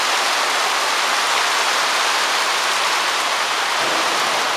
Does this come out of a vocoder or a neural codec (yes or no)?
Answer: no